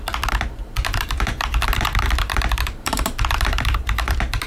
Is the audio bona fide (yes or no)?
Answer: no